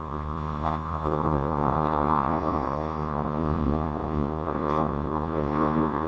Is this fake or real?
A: fake